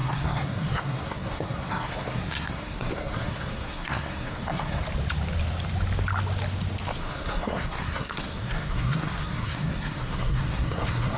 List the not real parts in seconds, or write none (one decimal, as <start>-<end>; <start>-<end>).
0.0-4.8; 6.9-11.2